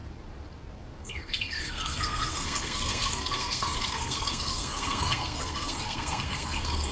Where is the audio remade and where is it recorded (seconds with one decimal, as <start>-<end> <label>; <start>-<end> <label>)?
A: 0.0-1.0 recorded; 1.0-6.9 remade